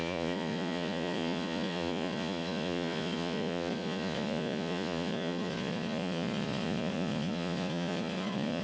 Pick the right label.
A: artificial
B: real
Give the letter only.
A